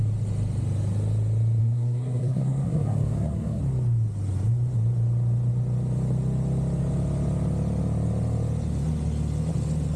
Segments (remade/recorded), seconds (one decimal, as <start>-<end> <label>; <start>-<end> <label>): 0.0-1.6 recorded; 1.6-3.6 remade; 3.6-10.0 recorded